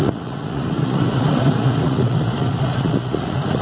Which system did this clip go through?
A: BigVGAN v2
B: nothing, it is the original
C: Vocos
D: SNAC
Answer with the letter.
C